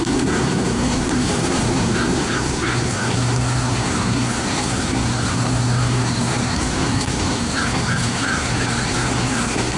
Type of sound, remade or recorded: remade